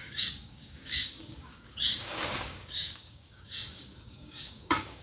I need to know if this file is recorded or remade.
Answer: remade